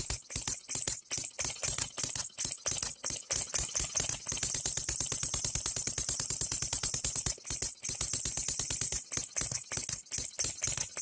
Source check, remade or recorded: recorded